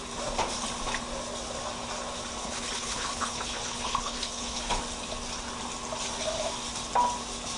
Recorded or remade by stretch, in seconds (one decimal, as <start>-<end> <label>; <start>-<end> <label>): 0.0-2.4 recorded; 2.4-4.8 remade; 4.8-7.6 recorded